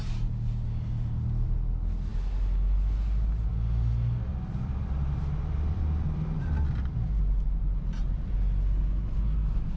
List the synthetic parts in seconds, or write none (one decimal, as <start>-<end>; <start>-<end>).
4.3-8.8